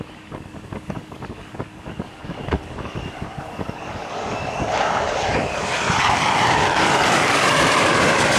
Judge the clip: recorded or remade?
remade